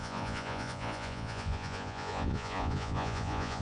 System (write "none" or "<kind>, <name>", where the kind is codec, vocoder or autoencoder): vocoder, Vocos